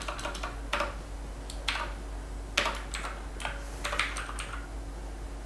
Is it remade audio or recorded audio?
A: recorded